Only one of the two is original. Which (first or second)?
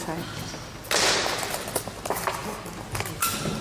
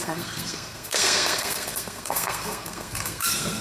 first